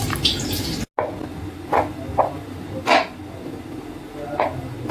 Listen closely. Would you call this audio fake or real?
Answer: real